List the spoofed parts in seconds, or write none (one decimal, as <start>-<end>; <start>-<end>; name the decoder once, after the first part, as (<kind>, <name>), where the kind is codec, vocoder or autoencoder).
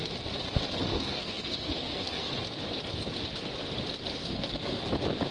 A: 0.9-2.3 (codec, SNAC); 4.1-4.8